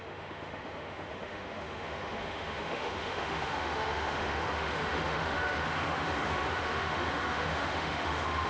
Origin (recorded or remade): remade